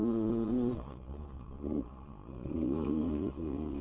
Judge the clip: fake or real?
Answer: fake